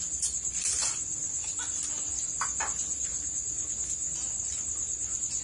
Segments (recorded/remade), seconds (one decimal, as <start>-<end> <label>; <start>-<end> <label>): 0.0-3.0 recorded; 3.0-3.7 remade; 3.7-5.4 recorded